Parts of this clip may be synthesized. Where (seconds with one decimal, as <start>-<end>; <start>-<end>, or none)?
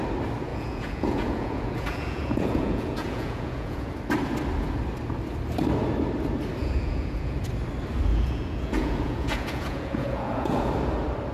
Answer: 0.5-3.9; 6.6-7.4; 8.1-10.7